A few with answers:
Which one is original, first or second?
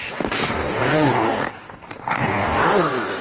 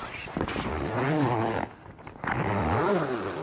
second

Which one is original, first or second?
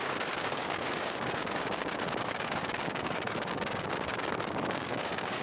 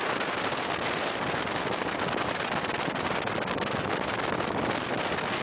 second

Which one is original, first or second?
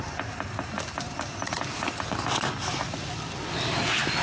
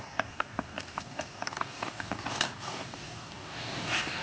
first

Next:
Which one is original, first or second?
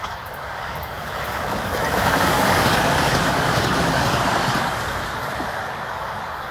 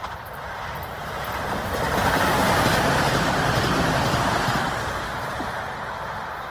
second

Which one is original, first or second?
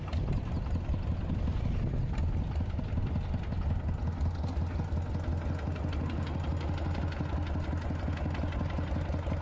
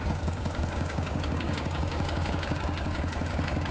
first